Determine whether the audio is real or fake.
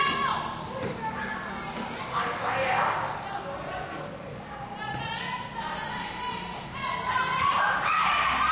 real